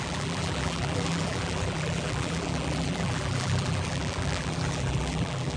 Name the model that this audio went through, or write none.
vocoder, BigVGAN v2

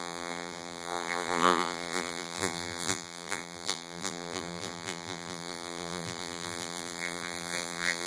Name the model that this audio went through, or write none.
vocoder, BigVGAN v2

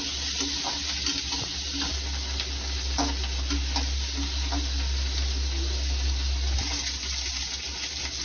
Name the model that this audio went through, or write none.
none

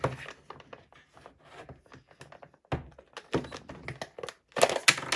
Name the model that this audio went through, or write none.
none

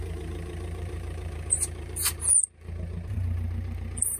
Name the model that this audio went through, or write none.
vocoder, BigVGAN v2